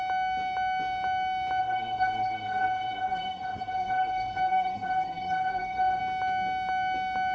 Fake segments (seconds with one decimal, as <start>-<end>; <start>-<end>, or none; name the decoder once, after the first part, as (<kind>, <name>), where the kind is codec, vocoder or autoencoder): 1.6-6.0 (codec, SNAC)